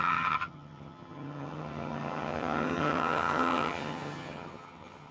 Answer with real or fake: fake